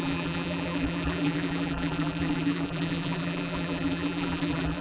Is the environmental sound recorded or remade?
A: remade